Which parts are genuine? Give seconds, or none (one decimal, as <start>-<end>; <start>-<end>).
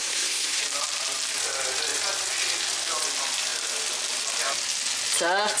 0.6-5.6